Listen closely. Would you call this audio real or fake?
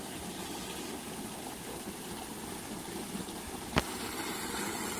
real